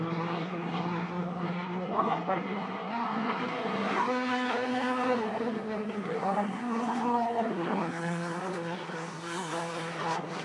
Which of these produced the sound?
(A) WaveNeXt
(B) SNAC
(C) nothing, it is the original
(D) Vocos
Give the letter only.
B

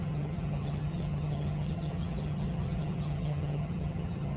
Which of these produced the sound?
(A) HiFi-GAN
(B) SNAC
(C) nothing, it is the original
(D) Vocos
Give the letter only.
A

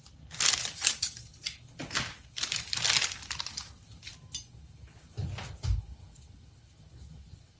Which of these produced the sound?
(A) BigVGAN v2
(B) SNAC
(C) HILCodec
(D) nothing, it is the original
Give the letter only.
D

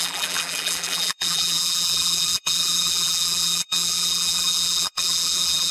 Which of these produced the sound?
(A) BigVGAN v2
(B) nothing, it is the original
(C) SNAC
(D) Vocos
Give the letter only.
A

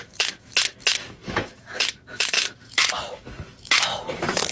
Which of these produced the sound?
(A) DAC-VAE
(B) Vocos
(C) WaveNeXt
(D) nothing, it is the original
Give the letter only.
A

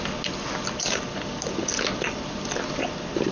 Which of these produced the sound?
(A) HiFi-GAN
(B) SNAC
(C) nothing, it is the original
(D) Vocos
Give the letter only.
C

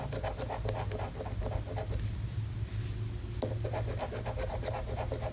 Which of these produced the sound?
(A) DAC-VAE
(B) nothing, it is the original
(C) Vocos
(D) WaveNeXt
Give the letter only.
B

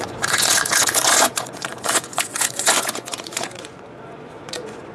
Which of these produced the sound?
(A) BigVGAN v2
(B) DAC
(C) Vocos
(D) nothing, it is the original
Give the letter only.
C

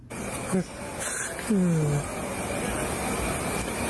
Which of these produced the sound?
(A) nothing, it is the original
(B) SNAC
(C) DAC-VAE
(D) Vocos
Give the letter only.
A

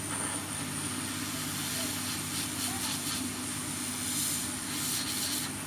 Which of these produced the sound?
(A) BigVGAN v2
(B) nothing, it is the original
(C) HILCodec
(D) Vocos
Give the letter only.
B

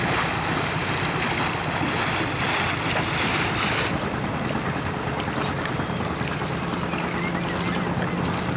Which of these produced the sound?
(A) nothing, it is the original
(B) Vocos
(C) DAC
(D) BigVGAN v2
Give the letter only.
A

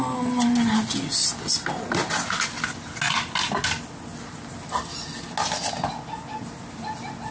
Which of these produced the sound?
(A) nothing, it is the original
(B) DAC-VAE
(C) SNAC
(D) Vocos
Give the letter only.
A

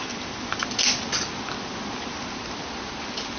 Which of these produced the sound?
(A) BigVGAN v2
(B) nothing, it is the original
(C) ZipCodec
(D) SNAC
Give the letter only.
B